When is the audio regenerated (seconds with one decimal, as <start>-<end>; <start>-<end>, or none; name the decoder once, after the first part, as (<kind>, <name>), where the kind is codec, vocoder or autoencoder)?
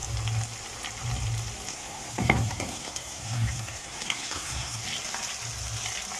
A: 1.7-4.8 (codec, SNAC)